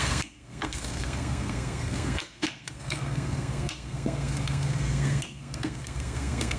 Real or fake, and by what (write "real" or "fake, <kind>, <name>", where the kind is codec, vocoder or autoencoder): fake, codec, SNAC